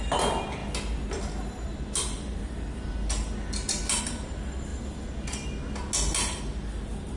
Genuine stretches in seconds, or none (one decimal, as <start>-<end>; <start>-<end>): 0.0-7.2